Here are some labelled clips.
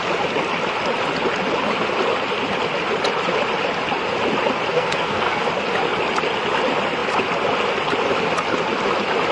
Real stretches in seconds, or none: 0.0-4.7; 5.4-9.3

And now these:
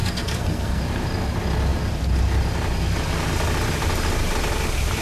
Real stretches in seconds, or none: 0.8-5.0

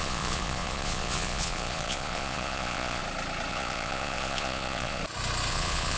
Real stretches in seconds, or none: 3.0-3.5; 5.0-5.5

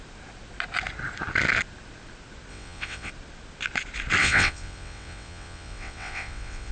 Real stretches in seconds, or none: 0.0-2.5; 3.1-4.2

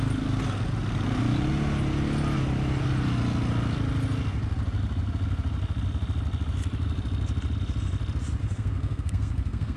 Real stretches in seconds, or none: 0.0-8.4

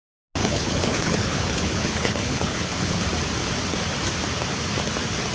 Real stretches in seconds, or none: 0.0-0.4; 3.0-5.3

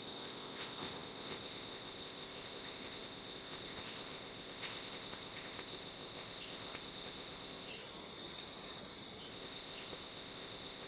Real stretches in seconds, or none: 7.7-9.3

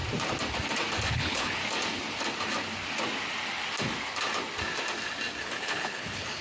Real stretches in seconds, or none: 0.0-1.1; 1.6-5.4